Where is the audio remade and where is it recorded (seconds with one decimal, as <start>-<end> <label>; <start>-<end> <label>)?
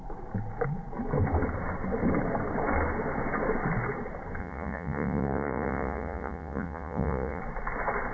0.0-4.4 recorded; 4.4-7.4 remade; 7.4-8.1 recorded